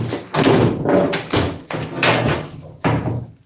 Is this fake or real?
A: real